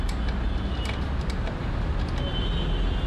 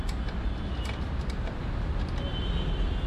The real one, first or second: first